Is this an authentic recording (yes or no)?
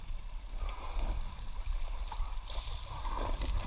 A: yes